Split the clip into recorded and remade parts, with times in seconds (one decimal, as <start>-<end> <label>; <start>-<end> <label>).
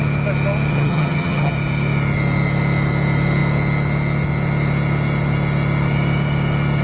0.0-0.7 recorded; 0.7-1.5 remade; 1.5-6.8 recorded